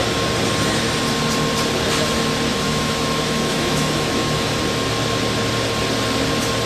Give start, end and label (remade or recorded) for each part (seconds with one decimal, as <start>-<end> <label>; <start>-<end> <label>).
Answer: 0.0-2.5 recorded; 2.5-4.6 remade; 4.6-6.7 recorded